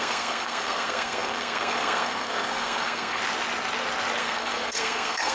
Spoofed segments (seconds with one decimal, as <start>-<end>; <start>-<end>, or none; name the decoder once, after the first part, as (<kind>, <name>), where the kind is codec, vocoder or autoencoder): 0.0-3.2 (codec, SNAC); 4.2-5.3